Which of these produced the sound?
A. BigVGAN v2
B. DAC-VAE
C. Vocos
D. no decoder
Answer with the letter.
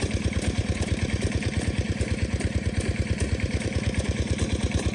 A